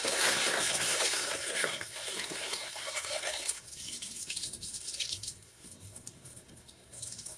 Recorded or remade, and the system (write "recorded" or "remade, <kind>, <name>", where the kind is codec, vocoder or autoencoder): remade, codec, SNAC